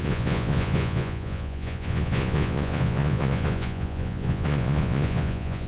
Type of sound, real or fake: fake